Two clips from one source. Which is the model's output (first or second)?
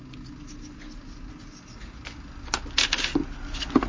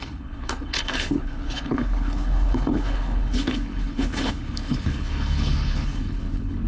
second